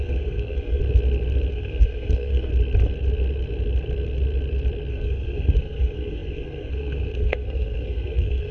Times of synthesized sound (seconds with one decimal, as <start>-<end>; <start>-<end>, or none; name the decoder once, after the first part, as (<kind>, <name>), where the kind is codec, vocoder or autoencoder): 0.0-0.8 (codec, SNAC); 1.5-2.5; 4.9-8.5

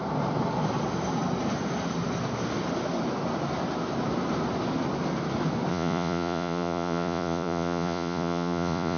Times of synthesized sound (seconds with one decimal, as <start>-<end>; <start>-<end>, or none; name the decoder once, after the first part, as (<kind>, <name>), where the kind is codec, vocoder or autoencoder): 5.7-9.0 (vocoder, Vocos)

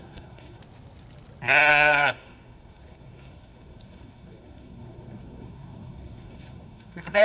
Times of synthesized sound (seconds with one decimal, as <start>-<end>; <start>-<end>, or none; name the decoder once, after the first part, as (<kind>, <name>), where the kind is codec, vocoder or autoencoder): 0.0-0.6 (codec, SNAC); 1.7-7.2

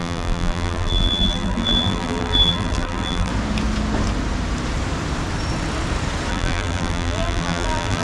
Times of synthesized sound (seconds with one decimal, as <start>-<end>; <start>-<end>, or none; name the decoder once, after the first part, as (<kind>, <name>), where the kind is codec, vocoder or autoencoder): 0.0-3.3 (vocoder, BigVGAN v2); 6.3-8.0

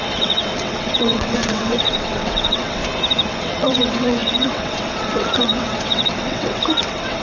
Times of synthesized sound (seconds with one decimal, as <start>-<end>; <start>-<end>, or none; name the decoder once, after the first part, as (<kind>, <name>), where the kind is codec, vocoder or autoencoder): 0.0-2.8 (vocoder, WaveNeXt); 3.3-7.2